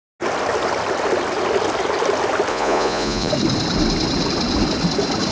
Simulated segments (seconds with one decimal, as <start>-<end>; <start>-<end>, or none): 2.5-3.3